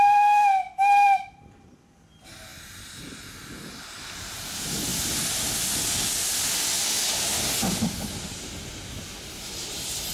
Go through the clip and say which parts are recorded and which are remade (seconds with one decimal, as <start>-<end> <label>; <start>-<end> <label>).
0.0-10.1 recorded